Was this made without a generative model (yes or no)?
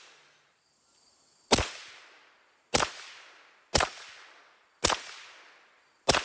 yes